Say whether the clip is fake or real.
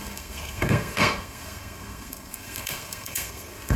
fake